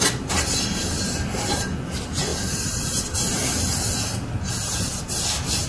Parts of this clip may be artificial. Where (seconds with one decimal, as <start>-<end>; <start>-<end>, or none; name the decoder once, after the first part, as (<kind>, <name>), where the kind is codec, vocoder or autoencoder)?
none